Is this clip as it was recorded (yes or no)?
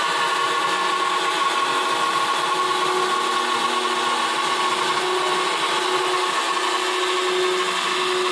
yes